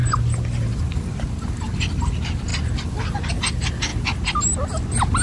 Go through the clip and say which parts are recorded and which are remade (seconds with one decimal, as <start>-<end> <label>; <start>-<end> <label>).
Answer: 0.0-5.2 recorded